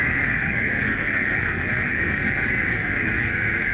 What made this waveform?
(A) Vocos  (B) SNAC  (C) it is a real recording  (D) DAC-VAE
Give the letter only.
B